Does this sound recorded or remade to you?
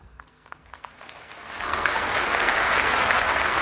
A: remade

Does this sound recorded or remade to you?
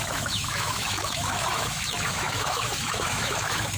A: remade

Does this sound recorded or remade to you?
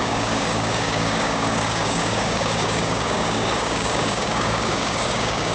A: remade